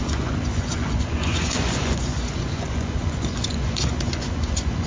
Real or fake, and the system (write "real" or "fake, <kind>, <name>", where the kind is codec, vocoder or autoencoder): fake, vocoder, Vocos